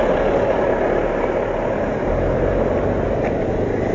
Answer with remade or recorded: recorded